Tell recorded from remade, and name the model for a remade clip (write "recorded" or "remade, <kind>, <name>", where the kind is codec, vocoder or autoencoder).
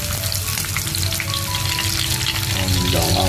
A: recorded